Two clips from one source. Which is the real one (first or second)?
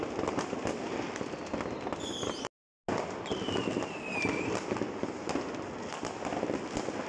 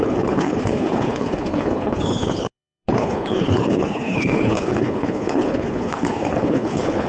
first